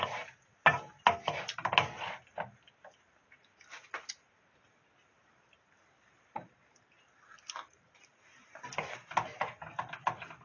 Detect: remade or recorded recorded